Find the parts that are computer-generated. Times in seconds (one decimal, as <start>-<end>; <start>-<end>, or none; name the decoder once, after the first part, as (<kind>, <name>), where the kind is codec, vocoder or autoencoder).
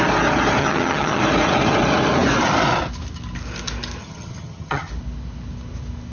0.6-1.2 (vocoder, HiFi-GAN); 4.0-4.9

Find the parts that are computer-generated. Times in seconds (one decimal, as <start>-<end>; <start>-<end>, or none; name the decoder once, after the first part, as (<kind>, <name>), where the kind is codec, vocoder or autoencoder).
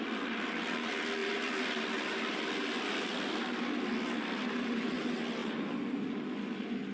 1.2-4.9 (vocoder, BigVGAN v2)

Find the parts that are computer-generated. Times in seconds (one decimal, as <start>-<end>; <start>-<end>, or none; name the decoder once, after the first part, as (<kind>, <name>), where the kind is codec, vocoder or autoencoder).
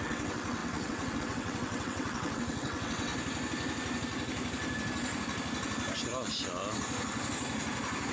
0.0-3.1 (vocoder, WaveNeXt)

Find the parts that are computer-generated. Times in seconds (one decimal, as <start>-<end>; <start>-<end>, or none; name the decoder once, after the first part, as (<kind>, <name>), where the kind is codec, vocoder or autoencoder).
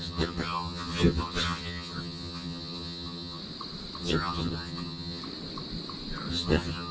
0.0-3.4 (vocoder, HiFi-GAN); 4.0-5.2; 6.3-6.9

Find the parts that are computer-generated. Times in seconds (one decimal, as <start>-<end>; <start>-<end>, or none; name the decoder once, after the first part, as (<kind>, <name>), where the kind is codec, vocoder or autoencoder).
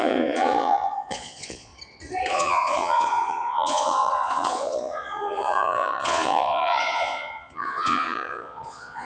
0.0-1.7 (vocoder, Vocos); 2.3-9.0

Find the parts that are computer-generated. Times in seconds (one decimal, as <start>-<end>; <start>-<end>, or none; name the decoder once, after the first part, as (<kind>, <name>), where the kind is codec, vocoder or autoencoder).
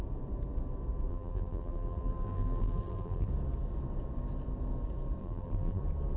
1.1-3.3 (vocoder, BigVGAN v2); 5.2-5.8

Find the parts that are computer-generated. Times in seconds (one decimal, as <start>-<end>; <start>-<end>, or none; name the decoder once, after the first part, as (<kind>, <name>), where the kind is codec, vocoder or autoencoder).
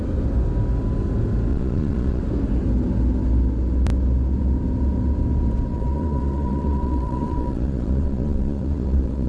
1.5-2.2 (vocoder, Vocos); 5.7-9.3